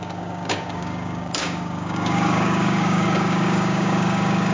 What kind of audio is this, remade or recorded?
remade